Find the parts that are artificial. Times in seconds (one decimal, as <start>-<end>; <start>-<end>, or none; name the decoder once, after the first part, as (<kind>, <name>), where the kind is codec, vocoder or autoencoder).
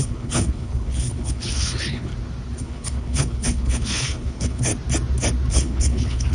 0.0-2.1 (codec, HILCodec); 2.6-4.7; 5.5-6.3